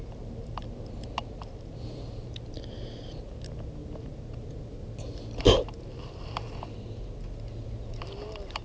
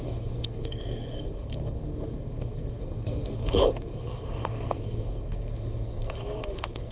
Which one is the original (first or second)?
first